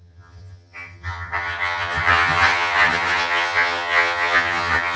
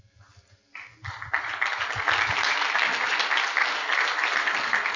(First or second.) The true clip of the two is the second